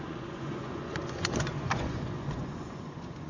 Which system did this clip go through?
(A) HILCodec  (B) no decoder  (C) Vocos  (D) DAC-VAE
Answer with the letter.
C